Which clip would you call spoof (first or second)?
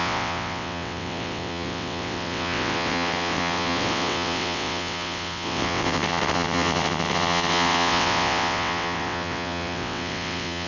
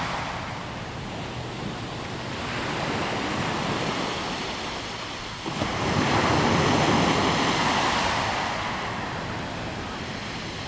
first